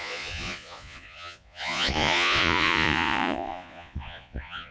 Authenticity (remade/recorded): remade